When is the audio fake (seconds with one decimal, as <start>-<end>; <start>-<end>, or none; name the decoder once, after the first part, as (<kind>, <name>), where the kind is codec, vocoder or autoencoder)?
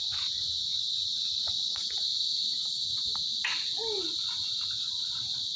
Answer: 0.0-0.7 (vocoder, Vocos); 1.4-2.1